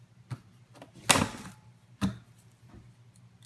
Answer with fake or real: real